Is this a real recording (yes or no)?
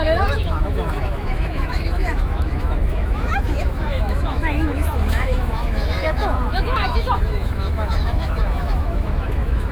no